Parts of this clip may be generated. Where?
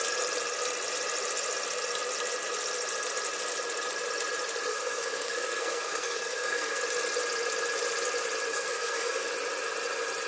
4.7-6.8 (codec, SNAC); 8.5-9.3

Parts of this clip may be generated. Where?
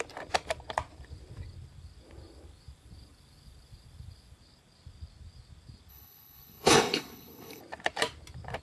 5.9-7.6 (codec, HILCodec)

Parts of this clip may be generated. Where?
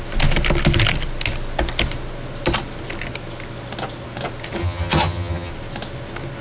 4.6-5.5 (vocoder, HiFi-GAN)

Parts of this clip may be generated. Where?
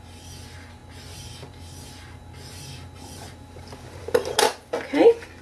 none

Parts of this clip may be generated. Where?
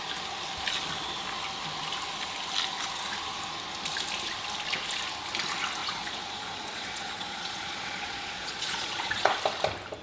5.8-9.3 (vocoder, Vocos)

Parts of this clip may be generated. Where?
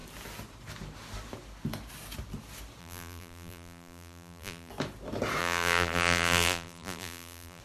2.8-4.7 (vocoder, BigVGAN v2); 5.4-7.6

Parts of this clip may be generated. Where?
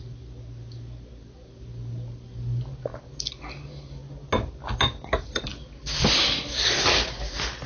none